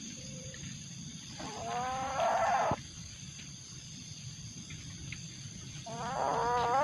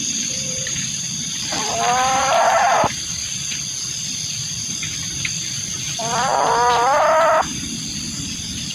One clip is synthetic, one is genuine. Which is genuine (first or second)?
first